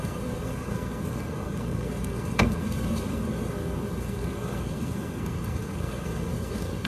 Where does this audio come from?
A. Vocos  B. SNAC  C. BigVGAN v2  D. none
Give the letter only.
B